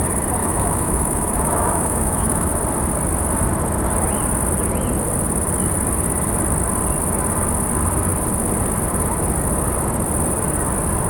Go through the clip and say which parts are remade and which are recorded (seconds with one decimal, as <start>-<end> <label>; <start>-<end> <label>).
0.0-0.4 recorded; 0.4-2.5 remade; 2.5-11.1 recorded